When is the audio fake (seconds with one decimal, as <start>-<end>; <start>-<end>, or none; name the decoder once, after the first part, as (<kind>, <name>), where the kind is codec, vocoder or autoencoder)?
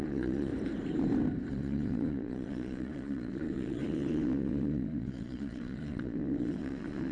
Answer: 0.0-0.5 (vocoder, Vocos); 1.5-7.1